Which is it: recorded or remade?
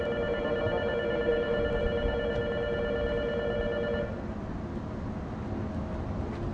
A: recorded